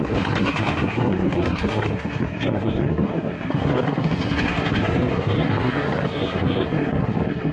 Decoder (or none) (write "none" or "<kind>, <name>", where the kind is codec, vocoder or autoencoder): codec, SNAC